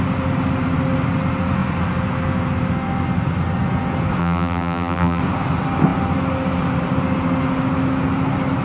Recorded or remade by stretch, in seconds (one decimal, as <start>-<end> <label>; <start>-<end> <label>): 0.0-4.2 recorded; 4.2-5.2 remade; 5.2-8.6 recorded